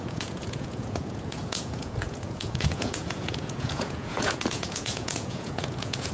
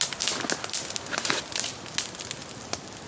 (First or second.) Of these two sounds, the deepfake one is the first